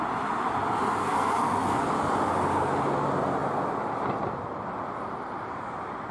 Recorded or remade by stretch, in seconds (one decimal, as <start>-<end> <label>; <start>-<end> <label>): 0.0-1.0 recorded; 1.0-1.8 remade; 1.8-6.1 recorded